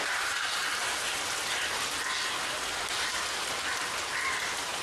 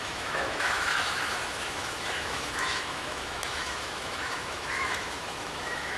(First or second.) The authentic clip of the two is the first